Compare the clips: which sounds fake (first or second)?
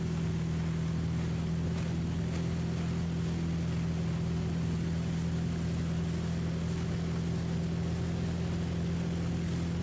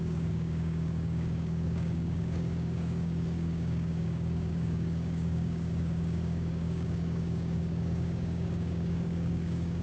second